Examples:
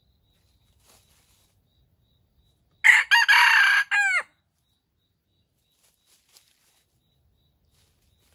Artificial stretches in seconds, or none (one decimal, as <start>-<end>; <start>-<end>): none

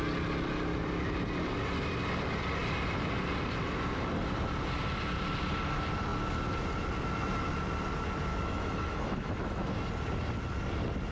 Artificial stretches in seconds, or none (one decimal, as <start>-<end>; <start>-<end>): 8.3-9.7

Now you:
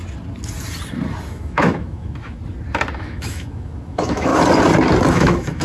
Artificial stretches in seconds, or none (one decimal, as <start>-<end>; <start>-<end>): 1.3-2.4; 3.0-4.3; 5.1-5.6

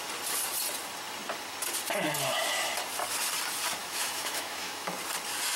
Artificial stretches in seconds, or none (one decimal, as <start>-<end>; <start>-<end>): 3.8-4.9

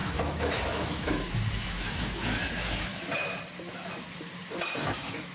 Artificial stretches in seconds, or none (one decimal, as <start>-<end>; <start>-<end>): 0.0-2.9; 4.8-5.3